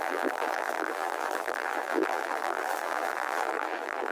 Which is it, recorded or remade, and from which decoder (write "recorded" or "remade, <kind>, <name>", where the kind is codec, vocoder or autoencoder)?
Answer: remade, vocoder, BigVGAN v2